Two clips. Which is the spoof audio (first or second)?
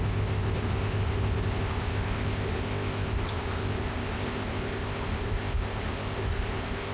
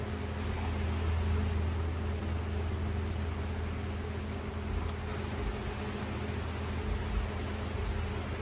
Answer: first